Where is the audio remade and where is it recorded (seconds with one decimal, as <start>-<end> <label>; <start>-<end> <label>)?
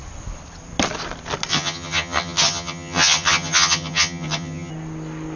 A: 0.0-1.5 recorded; 1.5-4.7 remade; 4.7-5.4 recorded